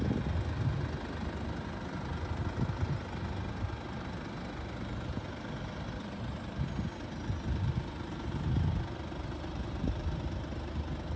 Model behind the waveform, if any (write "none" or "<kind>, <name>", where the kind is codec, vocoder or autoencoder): none